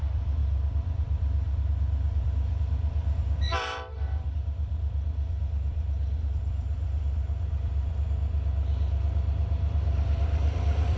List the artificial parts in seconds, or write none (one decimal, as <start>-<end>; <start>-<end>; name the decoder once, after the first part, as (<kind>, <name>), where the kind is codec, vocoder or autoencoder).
0.0-11.0 (vocoder, BigVGAN v2)